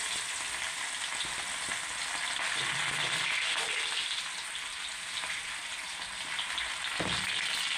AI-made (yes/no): no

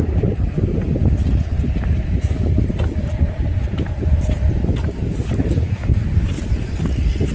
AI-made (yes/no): yes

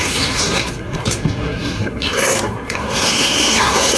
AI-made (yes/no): yes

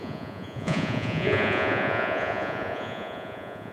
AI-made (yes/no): yes